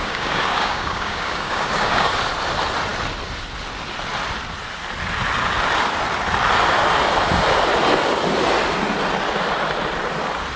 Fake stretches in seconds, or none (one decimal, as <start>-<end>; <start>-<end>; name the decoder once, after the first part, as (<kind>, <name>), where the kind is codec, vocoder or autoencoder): 0.0-2.1 (codec, DAC)